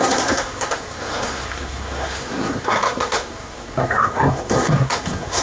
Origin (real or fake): fake